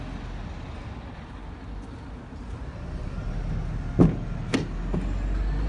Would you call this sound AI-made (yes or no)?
no